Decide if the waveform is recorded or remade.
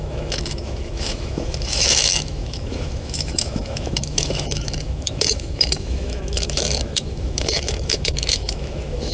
remade